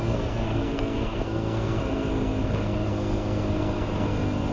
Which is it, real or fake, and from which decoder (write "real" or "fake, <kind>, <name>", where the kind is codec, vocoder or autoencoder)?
fake, codec, SNAC